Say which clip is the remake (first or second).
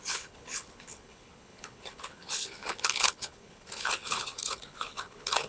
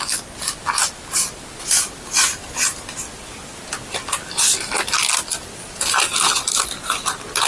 first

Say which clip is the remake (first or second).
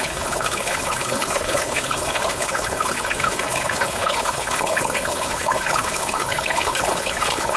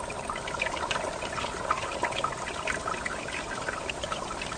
first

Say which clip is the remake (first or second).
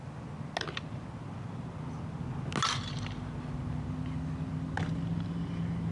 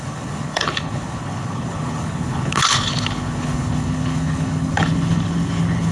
second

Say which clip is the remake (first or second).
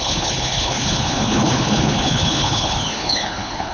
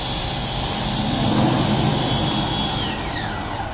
first